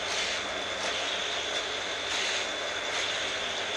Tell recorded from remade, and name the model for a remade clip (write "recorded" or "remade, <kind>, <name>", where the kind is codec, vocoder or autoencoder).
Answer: recorded